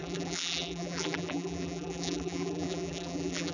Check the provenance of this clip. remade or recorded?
remade